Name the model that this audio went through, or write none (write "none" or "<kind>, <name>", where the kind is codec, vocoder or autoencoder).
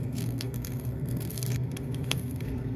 codec, SNAC